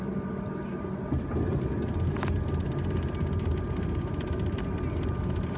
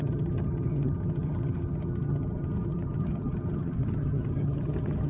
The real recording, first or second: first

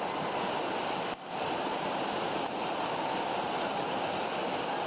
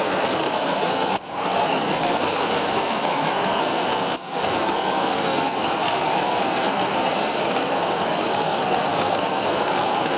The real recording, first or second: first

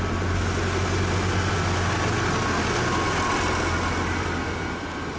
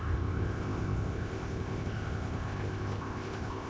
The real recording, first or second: first